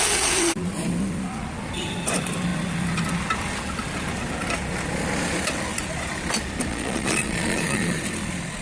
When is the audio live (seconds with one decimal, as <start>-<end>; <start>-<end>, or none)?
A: 0.0-6.7; 8.0-8.6